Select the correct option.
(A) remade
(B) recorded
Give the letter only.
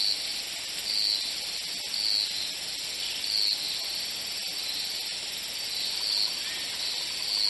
B